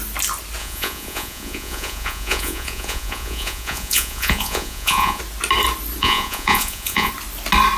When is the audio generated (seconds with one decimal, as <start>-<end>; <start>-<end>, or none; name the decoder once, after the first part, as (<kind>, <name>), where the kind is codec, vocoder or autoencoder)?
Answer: 0.6-5.2 (vocoder, Vocos); 6.0-7.1